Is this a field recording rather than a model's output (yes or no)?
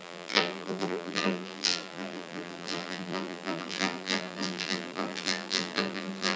no